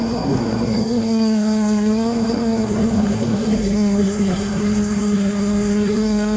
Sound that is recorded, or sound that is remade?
remade